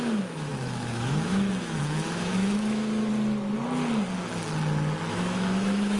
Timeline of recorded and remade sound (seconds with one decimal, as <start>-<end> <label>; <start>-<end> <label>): 0.0-3.1 remade; 3.1-5.1 recorded; 5.1-6.0 remade